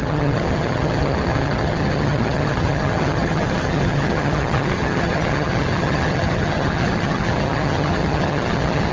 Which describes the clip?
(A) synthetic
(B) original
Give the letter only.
A